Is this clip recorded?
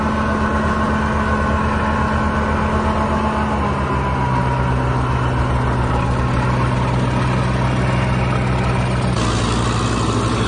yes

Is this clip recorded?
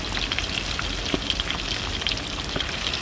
yes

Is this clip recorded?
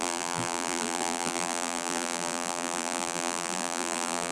no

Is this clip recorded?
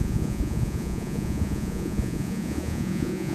no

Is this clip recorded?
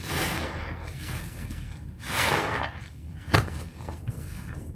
no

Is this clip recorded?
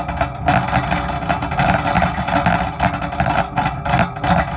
yes